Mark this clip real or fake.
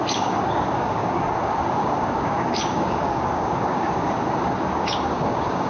fake